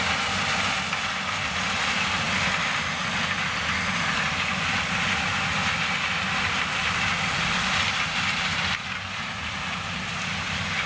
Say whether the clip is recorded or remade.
recorded